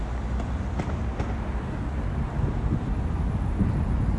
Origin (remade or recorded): recorded